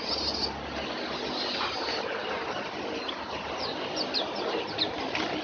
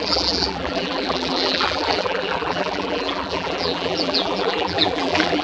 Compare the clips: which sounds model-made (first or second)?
second